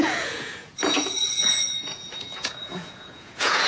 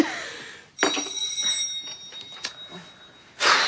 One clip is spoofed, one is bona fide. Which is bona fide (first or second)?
second